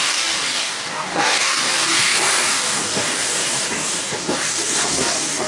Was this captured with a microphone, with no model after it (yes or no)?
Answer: no